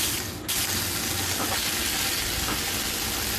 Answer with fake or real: real